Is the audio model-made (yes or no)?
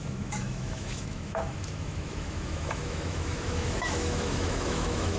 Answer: yes